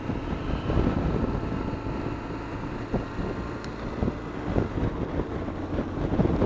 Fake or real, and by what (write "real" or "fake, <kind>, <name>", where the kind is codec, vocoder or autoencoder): real